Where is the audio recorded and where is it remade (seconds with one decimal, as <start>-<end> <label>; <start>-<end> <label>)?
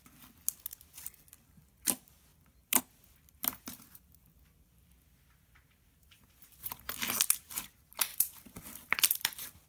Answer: 0.0-8.1 recorded; 8.1-9.7 remade